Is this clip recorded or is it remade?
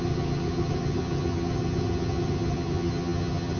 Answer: remade